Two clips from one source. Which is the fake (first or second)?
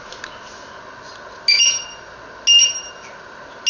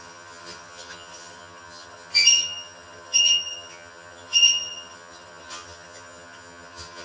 second